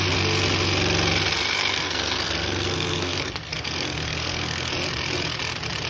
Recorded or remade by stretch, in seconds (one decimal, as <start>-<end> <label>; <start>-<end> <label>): 0.0-1.6 recorded; 1.6-4.7 remade; 4.7-5.9 recorded